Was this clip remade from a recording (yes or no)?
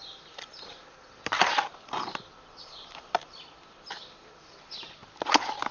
no